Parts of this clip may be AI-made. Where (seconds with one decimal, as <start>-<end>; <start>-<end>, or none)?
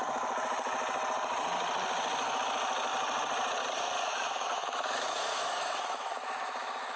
4.1-7.0